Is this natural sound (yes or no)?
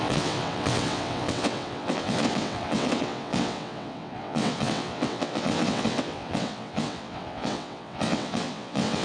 no